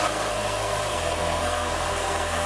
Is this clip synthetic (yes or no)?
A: yes